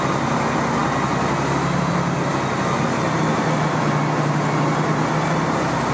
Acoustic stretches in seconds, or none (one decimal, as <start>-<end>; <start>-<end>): 0.0-5.9